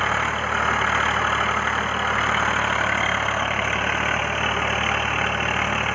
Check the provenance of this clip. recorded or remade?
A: recorded